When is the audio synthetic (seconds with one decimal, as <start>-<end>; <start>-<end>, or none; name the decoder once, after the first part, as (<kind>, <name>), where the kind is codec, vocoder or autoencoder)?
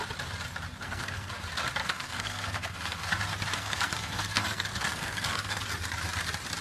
0.8-1.3 (codec, SNAC); 1.8-3.1; 3.5-5.6